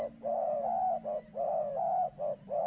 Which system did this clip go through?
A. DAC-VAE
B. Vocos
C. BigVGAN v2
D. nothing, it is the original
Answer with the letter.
D